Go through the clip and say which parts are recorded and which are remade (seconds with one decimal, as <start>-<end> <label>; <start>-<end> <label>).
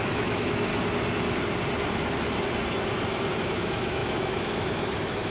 0.0-0.7 remade; 0.7-3.4 recorded; 3.4-5.3 remade